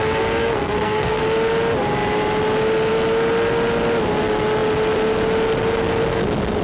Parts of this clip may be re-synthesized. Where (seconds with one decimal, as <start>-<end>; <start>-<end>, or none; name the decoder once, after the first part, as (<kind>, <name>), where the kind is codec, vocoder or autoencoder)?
0.4-1.2 (codec, SNAC)